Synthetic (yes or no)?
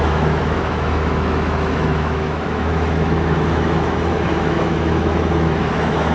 yes